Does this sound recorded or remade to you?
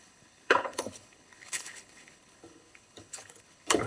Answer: remade